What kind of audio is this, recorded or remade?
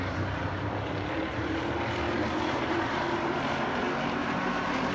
remade